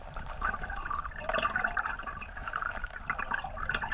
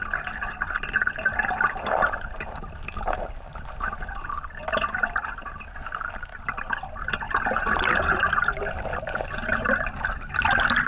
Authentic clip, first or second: second